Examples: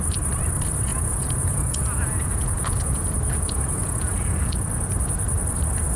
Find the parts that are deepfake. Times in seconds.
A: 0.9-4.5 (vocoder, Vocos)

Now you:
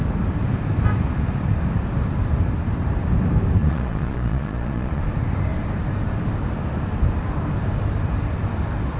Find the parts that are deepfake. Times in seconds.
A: 3.6-5.0 (vocoder, Vocos)